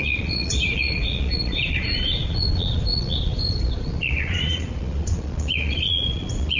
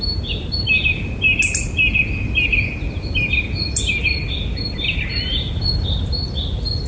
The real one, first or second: second